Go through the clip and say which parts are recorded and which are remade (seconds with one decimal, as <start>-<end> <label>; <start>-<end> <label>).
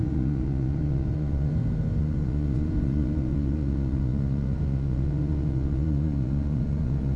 0.0-1.5 remade; 1.5-2.0 recorded; 2.0-7.2 remade